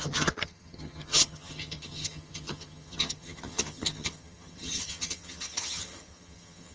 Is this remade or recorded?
remade